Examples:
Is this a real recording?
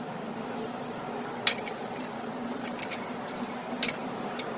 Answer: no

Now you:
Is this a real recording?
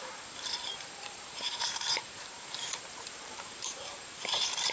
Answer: no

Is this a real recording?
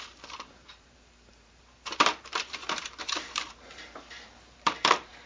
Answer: no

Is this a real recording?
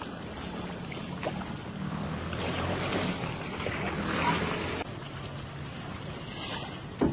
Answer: yes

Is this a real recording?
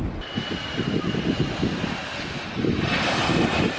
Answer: yes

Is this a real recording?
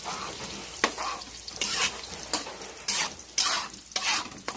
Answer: yes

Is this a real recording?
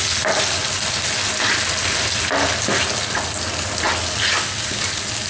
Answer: yes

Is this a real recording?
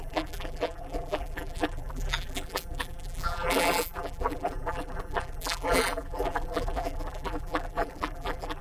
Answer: no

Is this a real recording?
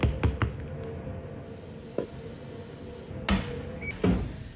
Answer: yes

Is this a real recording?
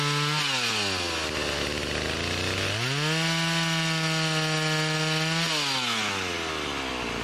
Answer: yes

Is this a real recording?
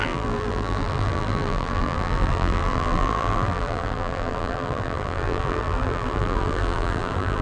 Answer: no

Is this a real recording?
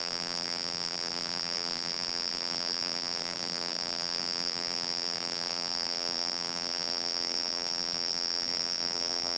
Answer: no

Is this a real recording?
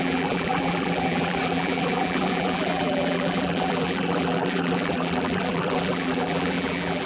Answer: no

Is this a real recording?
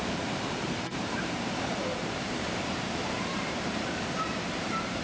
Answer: no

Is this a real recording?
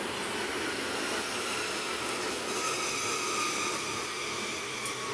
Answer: yes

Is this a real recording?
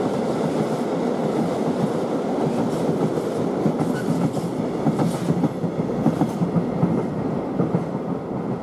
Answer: yes